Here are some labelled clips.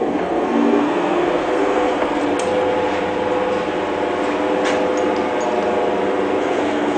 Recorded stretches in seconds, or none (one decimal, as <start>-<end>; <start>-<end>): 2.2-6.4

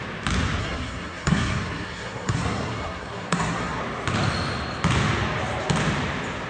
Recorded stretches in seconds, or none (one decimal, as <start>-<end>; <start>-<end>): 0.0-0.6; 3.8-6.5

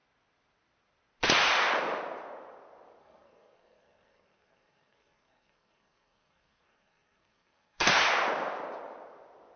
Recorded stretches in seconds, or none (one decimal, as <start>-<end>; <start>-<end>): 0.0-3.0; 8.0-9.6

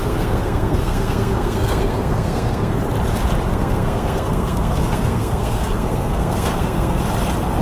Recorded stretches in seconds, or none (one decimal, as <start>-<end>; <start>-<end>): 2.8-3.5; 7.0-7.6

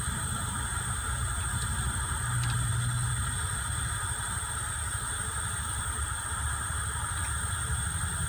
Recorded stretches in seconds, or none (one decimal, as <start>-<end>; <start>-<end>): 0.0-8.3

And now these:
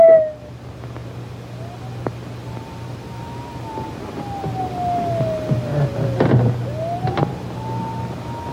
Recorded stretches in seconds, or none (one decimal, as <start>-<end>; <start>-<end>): 0.0-8.5

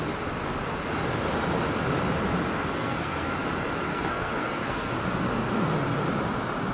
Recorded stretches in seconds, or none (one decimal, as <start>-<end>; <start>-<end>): 0.0-2.7; 3.3-3.9; 4.9-6.7